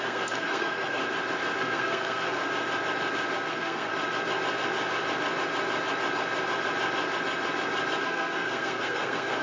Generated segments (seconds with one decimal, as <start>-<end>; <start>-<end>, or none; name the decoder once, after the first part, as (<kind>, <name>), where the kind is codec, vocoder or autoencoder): 0.0-1.0 (codec, SNAC); 1.6-2.4; 3.5-3.9; 8.0-9.4